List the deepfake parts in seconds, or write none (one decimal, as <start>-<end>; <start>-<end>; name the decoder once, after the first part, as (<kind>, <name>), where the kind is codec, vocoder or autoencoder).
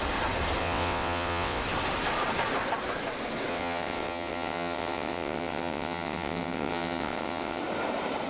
0.6-1.6 (vocoder, WaveNeXt); 3.5-7.6